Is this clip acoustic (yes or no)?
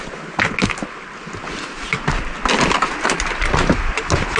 yes